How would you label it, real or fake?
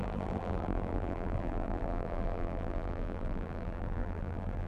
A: fake